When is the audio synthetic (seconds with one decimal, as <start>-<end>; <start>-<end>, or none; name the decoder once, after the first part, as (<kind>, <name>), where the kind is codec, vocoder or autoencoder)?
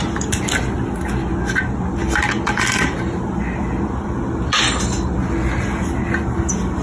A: none